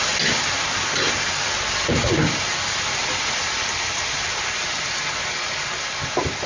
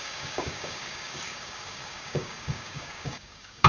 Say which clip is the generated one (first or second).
second